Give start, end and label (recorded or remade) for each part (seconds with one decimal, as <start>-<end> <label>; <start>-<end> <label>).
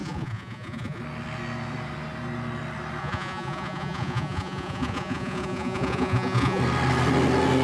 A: 0.0-1.0 remade; 1.0-3.0 recorded; 3.0-6.6 remade; 6.6-7.6 recorded